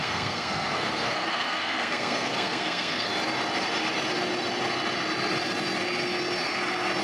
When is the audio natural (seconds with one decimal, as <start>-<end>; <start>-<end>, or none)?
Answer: 3.1-7.0